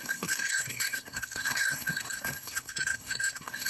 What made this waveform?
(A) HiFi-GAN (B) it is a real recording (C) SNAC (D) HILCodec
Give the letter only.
C